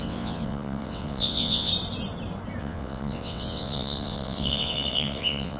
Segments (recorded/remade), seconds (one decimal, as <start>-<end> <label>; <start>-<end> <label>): 0.0-1.7 remade; 1.7-2.6 recorded; 2.6-5.6 remade